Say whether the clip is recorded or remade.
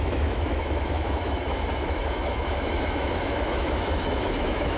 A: remade